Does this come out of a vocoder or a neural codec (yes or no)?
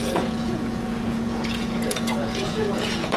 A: yes